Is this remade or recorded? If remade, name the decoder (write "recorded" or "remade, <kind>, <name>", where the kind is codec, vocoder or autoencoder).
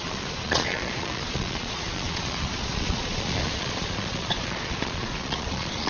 remade, vocoder, Vocos